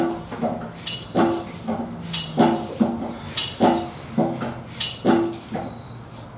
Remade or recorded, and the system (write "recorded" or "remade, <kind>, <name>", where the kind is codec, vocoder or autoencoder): recorded